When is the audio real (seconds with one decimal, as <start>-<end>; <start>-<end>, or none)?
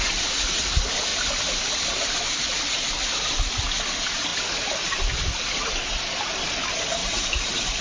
0.0-1.1; 2.4-7.0